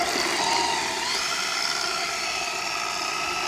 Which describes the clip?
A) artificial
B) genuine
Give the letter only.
B